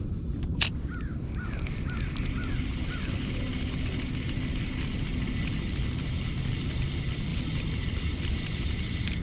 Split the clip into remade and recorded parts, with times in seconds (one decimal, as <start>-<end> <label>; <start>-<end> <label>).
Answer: 0.0-7.3 recorded; 7.3-8.0 remade; 8.0-9.2 recorded